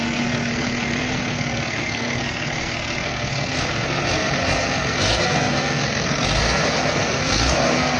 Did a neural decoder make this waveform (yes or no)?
yes